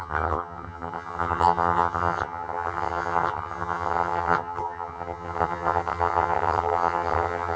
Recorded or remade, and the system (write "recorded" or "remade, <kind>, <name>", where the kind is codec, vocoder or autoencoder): remade, vocoder, HiFi-GAN